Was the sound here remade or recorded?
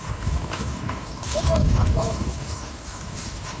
remade